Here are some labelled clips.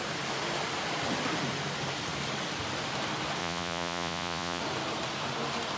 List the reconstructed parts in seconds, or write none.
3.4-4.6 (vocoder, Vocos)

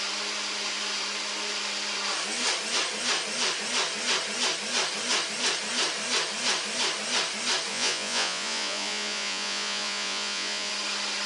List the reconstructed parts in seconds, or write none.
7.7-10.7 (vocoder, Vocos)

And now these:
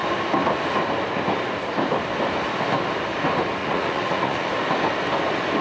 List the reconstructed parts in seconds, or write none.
3.6-4.5 (vocoder, Vocos)